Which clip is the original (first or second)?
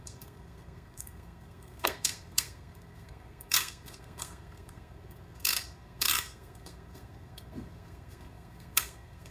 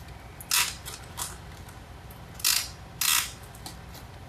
second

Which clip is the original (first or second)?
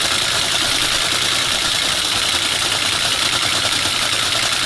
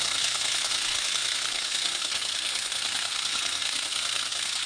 first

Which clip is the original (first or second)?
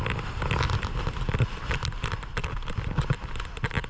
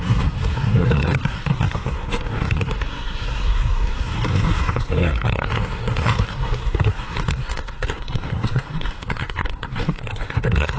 first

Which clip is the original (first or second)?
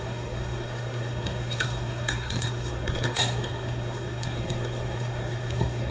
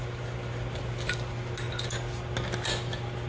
second